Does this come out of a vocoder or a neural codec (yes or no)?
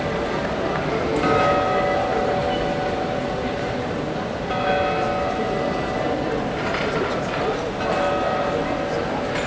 no